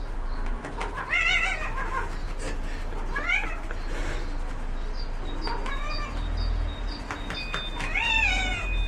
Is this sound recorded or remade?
recorded